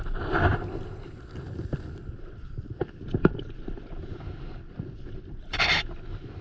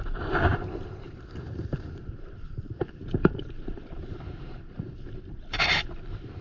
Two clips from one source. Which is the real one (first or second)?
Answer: first